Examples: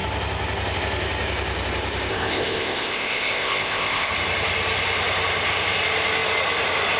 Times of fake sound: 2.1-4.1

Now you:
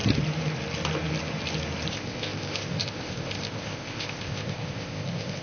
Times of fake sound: 1.9-5.4

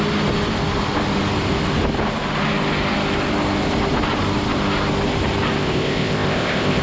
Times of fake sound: 5.6-6.8

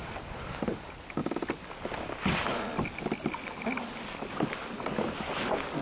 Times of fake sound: none

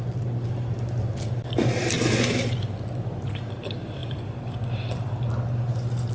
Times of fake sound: none